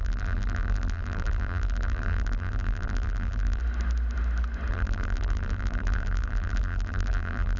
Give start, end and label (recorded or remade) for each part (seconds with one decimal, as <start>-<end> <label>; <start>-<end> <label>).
0.0-3.6 remade; 3.6-4.7 recorded; 4.7-7.6 remade